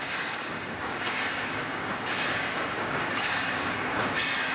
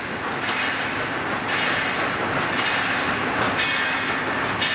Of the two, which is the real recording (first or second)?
second